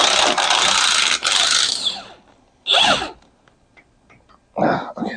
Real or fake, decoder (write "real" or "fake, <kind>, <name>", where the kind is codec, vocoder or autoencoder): real